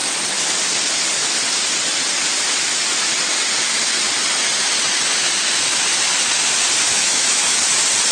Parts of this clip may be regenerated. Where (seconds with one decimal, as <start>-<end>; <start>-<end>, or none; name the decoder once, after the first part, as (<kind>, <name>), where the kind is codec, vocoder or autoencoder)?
6.9-7.6 (autoencoder, DAC-VAE)